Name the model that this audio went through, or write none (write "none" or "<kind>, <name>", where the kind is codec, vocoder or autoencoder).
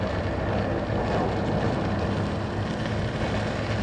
none